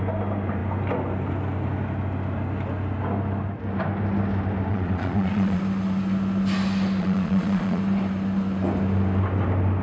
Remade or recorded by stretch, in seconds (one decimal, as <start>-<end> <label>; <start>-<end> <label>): 0.0-4.7 recorded; 4.7-5.6 remade; 5.6-7.0 recorded; 7.0-7.8 remade; 7.8-9.8 recorded